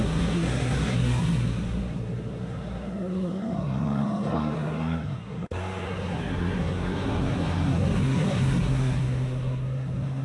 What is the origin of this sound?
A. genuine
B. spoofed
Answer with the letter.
B